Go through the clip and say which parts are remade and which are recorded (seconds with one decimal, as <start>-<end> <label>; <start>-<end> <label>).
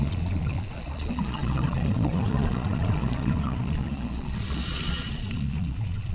0.0-6.1 remade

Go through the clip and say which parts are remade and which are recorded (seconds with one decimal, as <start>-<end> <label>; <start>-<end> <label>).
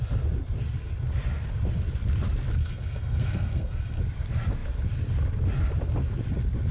0.0-2.6 recorded; 2.6-4.0 remade; 4.0-6.7 recorded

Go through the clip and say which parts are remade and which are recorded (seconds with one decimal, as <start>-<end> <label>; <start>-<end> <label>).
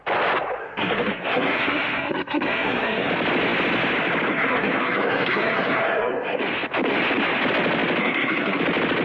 0.0-0.6 recorded; 0.6-3.1 remade; 3.1-4.3 recorded; 4.3-6.4 remade; 6.4-8.0 recorded; 8.0-8.6 remade; 8.6-9.0 recorded